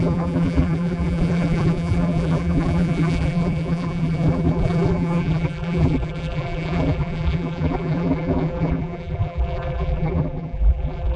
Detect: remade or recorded remade